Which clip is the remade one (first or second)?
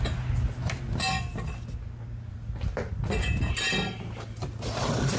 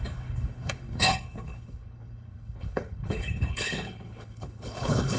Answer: second